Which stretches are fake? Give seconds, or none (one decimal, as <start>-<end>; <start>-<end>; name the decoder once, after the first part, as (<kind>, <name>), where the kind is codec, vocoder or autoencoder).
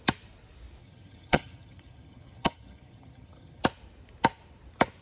0.8-3.6 (vocoder, HiFi-GAN)